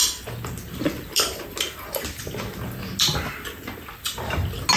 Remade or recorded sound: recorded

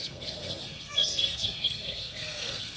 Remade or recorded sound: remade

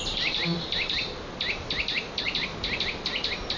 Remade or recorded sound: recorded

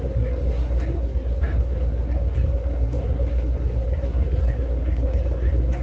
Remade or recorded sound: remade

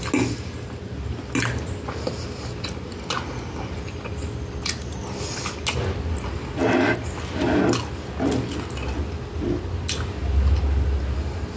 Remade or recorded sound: recorded